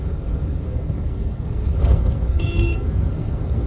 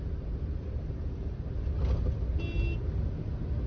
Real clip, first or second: second